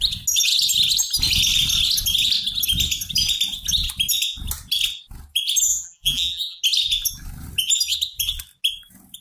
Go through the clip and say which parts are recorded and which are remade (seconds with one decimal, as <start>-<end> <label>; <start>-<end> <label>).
0.0-5.7 recorded; 5.7-6.6 remade; 6.6-9.2 recorded